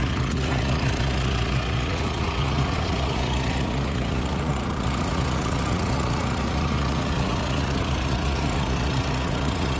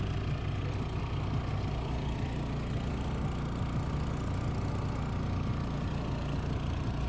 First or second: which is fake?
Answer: first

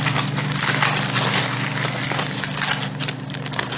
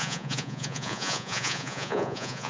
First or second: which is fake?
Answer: second